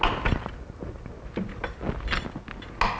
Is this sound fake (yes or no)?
no